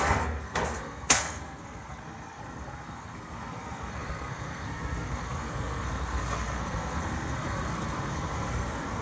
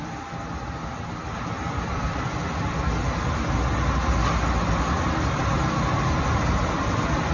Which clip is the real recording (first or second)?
second